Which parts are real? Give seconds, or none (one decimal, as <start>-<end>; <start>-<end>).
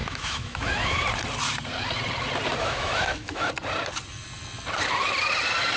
1.0-2.6; 3.5-5.8